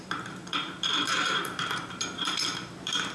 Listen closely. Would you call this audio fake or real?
fake